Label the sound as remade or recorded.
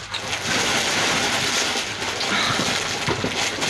recorded